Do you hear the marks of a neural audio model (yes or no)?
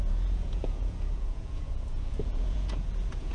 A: yes